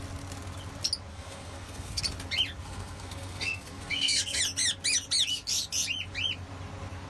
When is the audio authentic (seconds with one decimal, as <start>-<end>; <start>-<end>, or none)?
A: 0.0-1.1; 2.0-2.6; 4.4-7.1